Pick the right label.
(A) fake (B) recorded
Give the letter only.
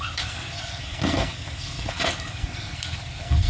A